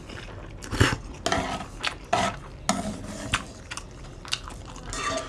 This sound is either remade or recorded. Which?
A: recorded